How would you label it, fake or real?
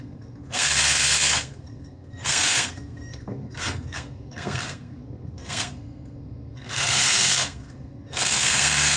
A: fake